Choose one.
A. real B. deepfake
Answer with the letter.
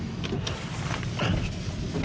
A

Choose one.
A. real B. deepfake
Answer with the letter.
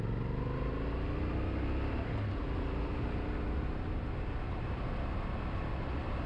A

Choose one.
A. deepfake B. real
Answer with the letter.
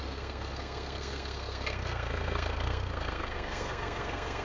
A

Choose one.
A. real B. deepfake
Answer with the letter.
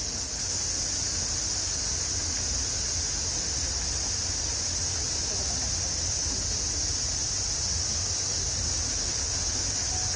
A